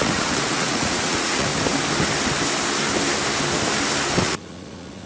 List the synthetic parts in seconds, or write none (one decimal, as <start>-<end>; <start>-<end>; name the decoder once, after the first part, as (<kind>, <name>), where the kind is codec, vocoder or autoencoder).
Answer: 0.0-1.5 (vocoder, Vocos); 4.2-5.1